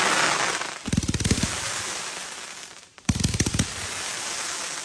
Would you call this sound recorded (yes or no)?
yes